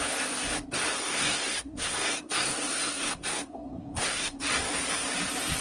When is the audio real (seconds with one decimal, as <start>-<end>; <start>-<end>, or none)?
0.0-1.0; 4.4-5.6